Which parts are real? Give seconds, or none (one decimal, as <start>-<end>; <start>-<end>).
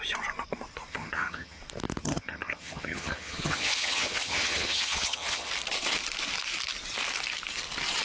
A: 0.0-0.9; 1.6-2.0; 5.5-8.0